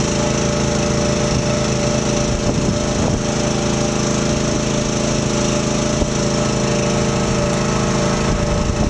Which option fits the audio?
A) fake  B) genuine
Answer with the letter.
B